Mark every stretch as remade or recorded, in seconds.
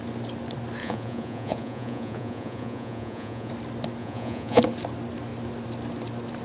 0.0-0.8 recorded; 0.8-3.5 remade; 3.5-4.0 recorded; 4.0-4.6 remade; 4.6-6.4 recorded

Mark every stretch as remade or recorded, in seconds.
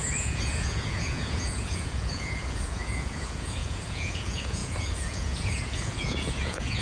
0.0-6.8 remade